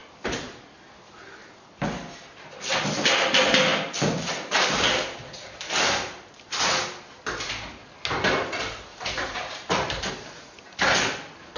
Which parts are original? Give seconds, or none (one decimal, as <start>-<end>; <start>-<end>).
0.0-8.9; 10.1-11.6